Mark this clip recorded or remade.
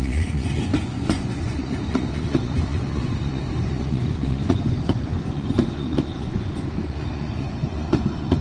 remade